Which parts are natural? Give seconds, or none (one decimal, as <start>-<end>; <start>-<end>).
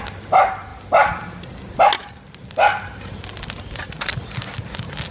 0.0-5.1